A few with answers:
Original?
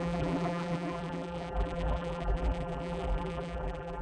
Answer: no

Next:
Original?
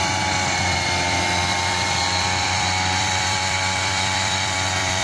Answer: no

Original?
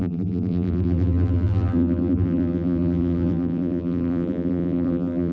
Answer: no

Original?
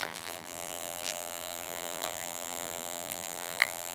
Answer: no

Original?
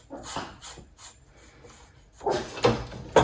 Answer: yes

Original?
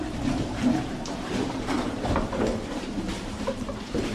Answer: no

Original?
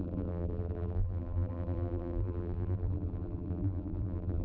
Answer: no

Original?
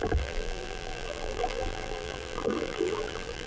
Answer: no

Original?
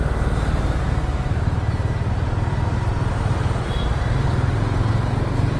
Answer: yes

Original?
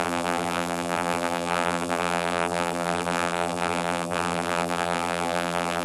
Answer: no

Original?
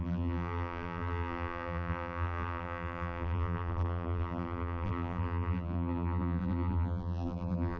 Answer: no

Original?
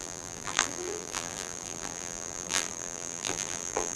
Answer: no